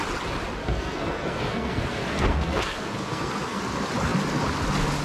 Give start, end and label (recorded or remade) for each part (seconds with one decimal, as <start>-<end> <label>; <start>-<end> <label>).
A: 0.0-0.6 recorded; 0.6-3.6 remade; 3.6-5.0 recorded

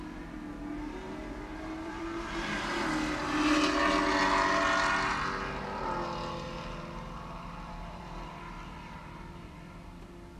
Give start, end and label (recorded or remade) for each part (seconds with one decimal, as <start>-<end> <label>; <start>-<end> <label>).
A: 0.0-1.5 recorded; 1.5-2.3 remade; 2.3-10.4 recorded

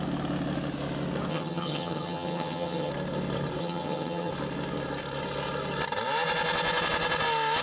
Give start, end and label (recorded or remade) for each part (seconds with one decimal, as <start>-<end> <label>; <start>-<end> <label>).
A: 0.0-1.3 recorded; 1.3-2.9 remade; 2.9-3.6 recorded; 3.6-4.3 remade; 4.3-7.6 recorded

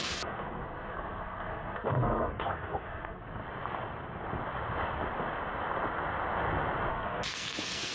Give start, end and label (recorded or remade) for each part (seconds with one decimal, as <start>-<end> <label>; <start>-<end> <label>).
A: 0.0-3.4 remade; 3.4-6.9 recorded; 6.9-7.9 remade

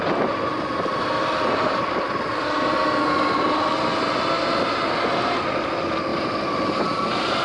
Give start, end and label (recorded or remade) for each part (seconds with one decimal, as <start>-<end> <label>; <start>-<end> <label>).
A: 0.0-7.4 recorded

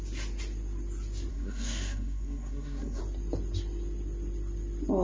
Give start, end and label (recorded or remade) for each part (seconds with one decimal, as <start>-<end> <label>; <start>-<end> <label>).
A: 0.0-1.3 recorded; 1.3-3.0 remade; 3.0-5.0 recorded